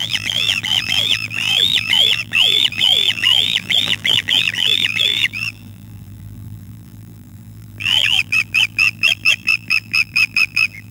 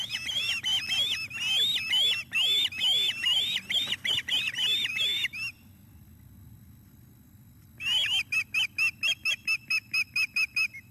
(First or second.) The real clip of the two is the second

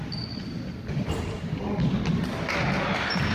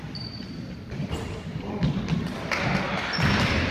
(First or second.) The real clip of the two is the first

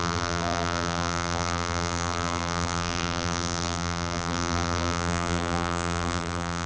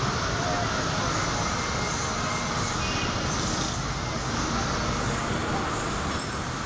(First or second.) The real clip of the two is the second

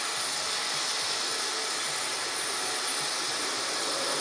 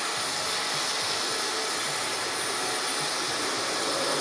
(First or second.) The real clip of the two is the second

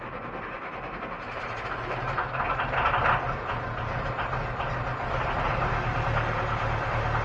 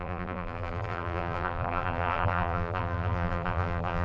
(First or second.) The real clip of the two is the first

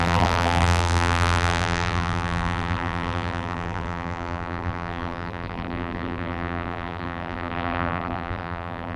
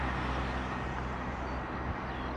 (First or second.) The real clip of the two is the second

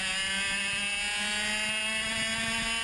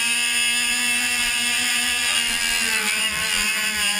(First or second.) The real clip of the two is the first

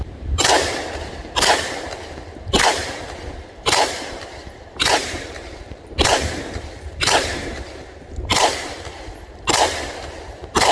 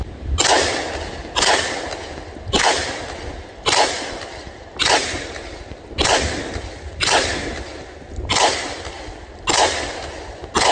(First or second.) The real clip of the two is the second